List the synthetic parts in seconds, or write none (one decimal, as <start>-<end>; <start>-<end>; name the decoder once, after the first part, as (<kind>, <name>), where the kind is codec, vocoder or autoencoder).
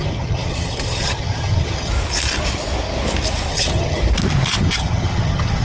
0.0-1.9 (vocoder, HiFi-GAN); 3.5-4.0; 4.6-5.6